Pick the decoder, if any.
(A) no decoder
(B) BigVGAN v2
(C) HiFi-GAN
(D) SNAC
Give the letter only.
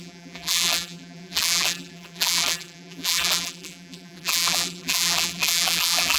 B